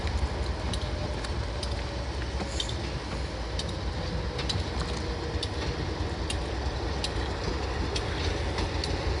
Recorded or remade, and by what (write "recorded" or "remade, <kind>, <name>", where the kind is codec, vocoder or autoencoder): recorded